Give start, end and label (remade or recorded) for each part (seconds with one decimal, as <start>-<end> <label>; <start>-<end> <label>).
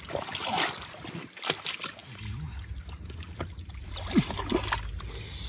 0.0-5.5 recorded